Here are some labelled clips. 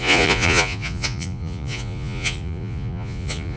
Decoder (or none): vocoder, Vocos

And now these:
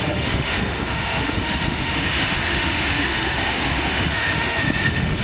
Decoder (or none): autoencoder, DAC-VAE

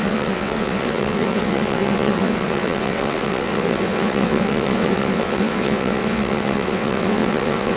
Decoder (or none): vocoder, WaveNeXt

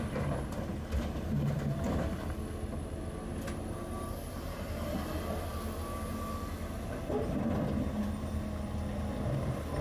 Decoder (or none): none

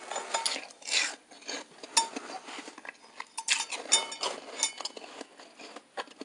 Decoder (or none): none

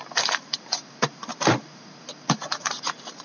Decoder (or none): vocoder, BigVGAN v2